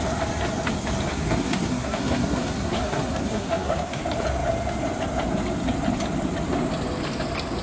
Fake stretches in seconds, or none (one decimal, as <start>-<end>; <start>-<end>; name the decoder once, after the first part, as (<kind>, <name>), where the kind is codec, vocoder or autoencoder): 1.1-4.0 (codec, SNAC)